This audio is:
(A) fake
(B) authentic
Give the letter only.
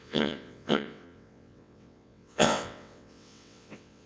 A